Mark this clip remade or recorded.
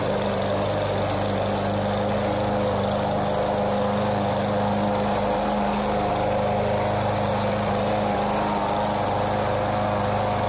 recorded